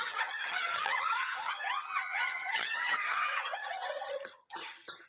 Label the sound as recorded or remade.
remade